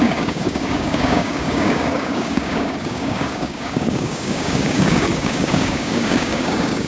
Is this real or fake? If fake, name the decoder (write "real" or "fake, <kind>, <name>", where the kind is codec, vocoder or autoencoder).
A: fake, codec, DAC